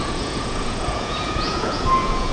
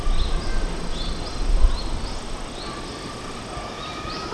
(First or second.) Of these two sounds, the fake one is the first